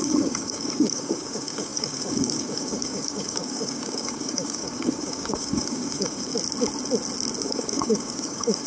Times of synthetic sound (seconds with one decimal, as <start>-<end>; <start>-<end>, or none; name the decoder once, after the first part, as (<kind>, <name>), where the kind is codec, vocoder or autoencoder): 0.0-6.3 (codec, DAC); 7.4-8.7